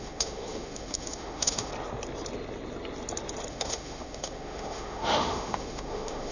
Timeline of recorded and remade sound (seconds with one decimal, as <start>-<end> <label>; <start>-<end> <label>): 0.0-1.7 remade; 1.7-3.5 recorded; 3.5-6.3 remade